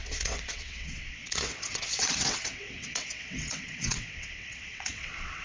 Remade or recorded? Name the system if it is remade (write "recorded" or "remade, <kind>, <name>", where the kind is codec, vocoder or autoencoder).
remade, vocoder, WaveNeXt